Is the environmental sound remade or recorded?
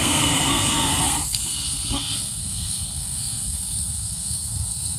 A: remade